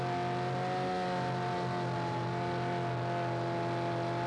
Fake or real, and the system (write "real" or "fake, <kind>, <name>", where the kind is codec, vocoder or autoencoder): real